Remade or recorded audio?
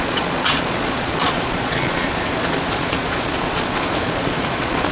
remade